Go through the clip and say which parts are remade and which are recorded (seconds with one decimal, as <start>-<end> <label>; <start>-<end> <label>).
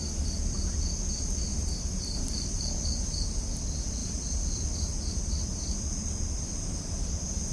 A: 0.0-1.5 recorded; 1.5-2.8 remade; 2.8-7.5 recorded